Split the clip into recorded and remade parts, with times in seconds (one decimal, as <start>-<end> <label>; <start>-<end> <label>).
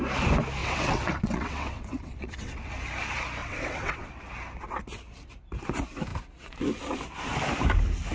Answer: 0.0-0.6 recorded; 0.6-2.7 remade; 2.7-3.4 recorded; 3.4-4.2 remade; 4.2-8.1 recorded